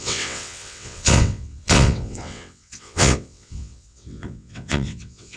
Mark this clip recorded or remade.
remade